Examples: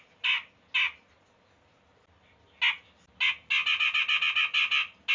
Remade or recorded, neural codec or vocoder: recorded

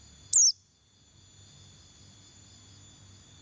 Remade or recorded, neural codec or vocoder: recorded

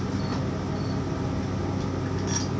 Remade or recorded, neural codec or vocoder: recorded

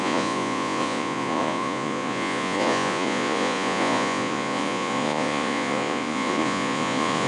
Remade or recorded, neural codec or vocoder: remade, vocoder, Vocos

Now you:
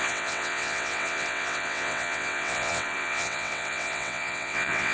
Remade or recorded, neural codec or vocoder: remade, vocoder, WaveNeXt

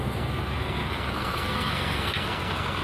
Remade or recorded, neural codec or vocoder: remade, codec, SNAC